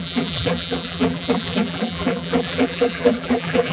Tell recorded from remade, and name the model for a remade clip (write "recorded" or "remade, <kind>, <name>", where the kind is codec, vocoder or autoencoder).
remade, vocoder, BigVGAN v2